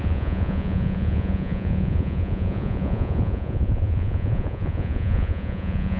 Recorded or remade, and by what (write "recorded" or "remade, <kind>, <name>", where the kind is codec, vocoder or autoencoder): remade, vocoder, Vocos